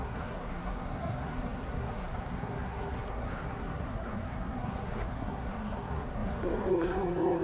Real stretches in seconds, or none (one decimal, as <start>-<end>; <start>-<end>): none